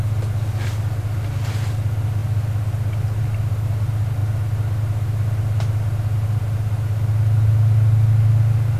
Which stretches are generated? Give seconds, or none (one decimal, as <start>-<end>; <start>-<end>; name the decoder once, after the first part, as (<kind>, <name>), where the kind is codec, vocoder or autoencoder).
none